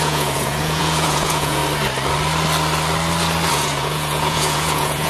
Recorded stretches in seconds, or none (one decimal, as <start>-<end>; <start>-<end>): 1.6-3.5